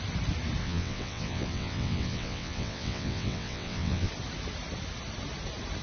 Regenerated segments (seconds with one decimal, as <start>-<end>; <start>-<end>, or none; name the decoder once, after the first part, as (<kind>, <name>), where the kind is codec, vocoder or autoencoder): 0.6-4.1 (vocoder, WaveNeXt)